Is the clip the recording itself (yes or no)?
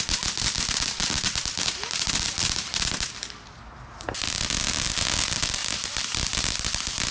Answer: yes